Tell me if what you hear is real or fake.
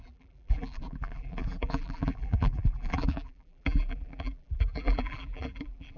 fake